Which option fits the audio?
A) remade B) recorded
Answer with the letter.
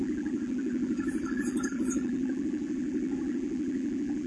A